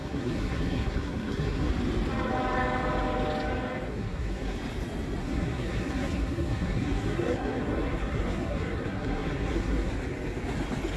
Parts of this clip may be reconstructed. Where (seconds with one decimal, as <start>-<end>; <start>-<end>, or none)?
0.0-1.7; 3.9-4.6; 5.2-9.9